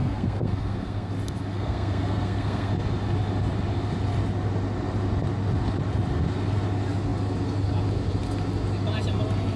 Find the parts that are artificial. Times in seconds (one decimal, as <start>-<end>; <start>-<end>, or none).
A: 0.0-1.1; 1.5-2.7